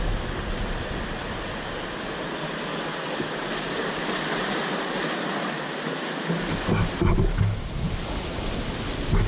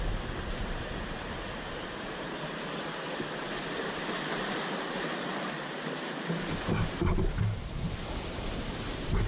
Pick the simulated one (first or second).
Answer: second